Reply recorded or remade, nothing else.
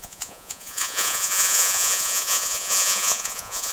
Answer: remade